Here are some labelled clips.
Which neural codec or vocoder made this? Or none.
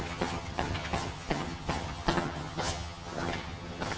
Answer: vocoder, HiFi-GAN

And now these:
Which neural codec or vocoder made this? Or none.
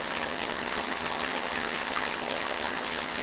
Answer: vocoder, HiFi-GAN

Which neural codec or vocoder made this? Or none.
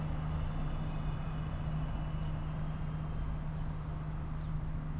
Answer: none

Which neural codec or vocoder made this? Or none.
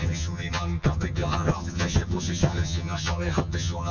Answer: vocoder, HiFi-GAN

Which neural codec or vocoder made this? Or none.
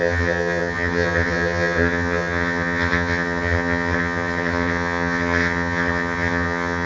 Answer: vocoder, HiFi-GAN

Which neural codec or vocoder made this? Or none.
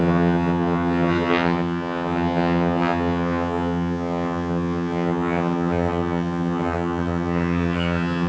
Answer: vocoder, HiFi-GAN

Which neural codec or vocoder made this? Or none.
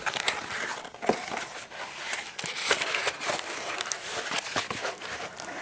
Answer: none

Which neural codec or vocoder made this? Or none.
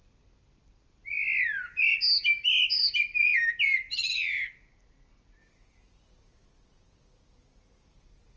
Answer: none